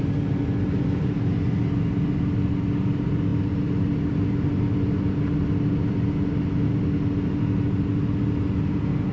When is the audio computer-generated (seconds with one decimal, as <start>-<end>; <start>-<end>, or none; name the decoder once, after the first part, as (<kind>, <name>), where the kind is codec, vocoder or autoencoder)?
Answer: none